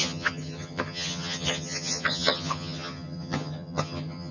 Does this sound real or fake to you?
fake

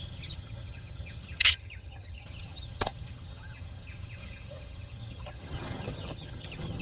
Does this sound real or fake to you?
fake